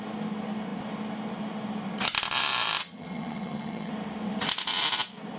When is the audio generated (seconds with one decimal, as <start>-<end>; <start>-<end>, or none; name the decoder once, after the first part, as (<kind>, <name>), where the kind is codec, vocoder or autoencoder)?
2.8-3.9 (vocoder, HiFi-GAN)